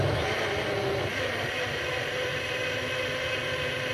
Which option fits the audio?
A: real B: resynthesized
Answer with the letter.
A